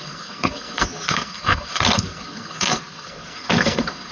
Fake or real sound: fake